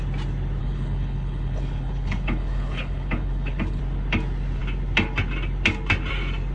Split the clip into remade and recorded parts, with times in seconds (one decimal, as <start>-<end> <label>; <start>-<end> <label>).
0.0-0.6 recorded; 0.6-3.8 remade; 3.8-6.5 recorded